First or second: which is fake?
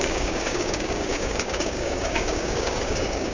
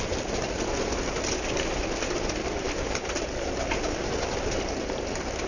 first